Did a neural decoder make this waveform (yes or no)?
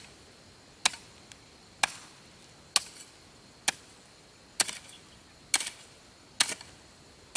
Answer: no